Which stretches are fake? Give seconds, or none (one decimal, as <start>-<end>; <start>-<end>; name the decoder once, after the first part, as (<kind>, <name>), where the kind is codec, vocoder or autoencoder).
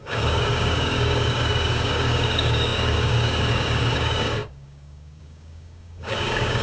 0.0-6.6 (codec, DAC)